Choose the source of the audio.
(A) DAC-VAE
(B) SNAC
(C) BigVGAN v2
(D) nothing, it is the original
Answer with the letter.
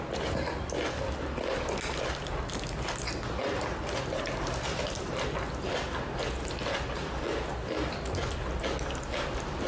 D